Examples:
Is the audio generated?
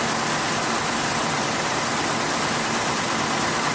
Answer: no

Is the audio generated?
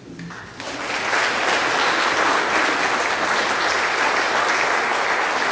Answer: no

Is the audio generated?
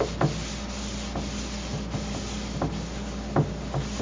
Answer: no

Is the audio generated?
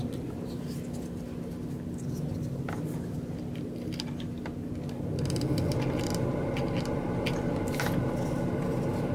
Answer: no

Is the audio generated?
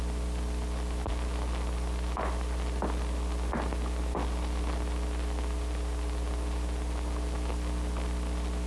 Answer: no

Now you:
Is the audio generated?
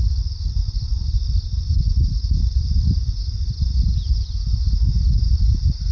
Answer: no